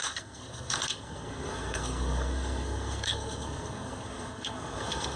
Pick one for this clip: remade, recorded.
remade